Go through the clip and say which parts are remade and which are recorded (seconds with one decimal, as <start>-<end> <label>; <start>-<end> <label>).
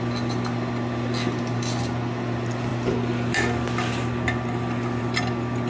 0.0-5.7 recorded